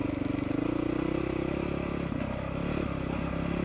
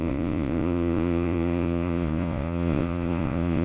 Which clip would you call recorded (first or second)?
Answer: first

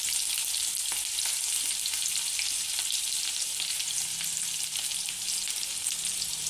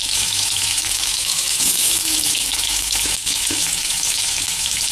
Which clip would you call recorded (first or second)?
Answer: first